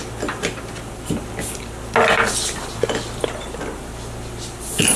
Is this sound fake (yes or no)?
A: no